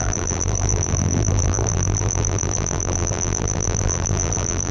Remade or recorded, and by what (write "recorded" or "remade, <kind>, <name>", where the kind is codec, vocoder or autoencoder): remade, vocoder, BigVGAN v2